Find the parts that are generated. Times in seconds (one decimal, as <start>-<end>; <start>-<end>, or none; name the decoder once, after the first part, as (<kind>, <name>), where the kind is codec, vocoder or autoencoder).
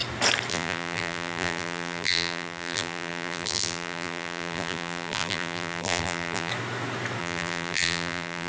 0.5-6.5 (vocoder, BigVGAN v2); 7.2-8.5